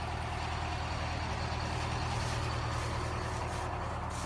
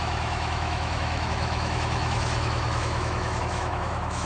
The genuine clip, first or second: first